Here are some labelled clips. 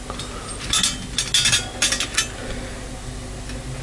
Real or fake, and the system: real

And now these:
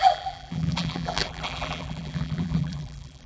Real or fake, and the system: fake, vocoder, BigVGAN v2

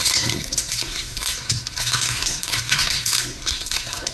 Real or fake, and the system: fake, codec, SNAC